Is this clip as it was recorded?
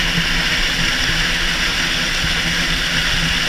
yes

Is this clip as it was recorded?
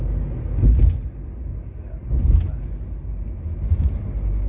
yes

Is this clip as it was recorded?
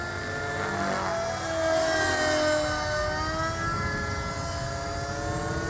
yes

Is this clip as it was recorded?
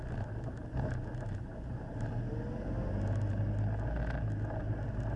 yes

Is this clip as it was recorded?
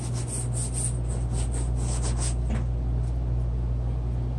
yes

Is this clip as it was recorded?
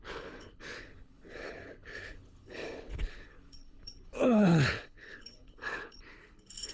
no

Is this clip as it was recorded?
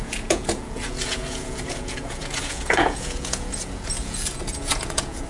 no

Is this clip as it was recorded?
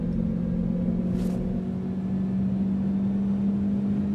yes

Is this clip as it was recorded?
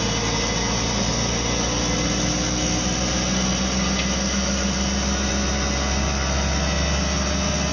yes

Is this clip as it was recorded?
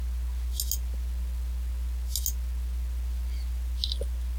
yes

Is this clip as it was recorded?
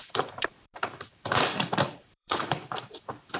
no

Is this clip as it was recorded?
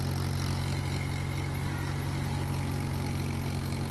yes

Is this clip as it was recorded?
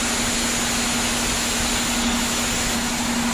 yes